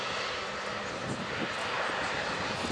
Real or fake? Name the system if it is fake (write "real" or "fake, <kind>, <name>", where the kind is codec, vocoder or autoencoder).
real